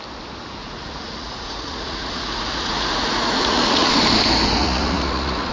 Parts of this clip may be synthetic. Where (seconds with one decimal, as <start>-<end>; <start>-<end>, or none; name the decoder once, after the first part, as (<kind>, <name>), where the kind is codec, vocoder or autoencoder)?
0.6-3.9 (vocoder, Vocos); 4.6-5.5

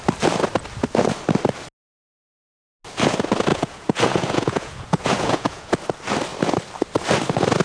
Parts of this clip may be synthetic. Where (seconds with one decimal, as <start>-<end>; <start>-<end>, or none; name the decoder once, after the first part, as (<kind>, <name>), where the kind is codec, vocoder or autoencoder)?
3.5-5.7 (vocoder, Vocos)